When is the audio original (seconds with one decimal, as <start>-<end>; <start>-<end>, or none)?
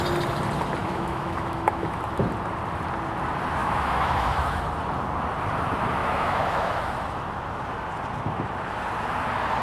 0.0-0.8; 2.0-3.6; 4.6-6.0; 6.8-9.6